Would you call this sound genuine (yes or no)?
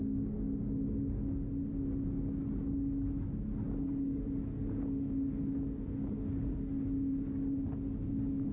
yes